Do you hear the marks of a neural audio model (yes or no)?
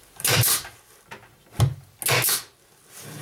no